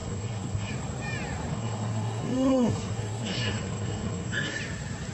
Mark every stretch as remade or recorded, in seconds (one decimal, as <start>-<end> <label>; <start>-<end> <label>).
0.0-0.7 remade; 0.7-1.5 recorded; 1.5-4.6 remade; 4.6-5.1 recorded